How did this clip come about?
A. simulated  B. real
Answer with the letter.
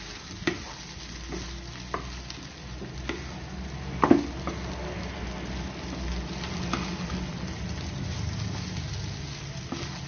B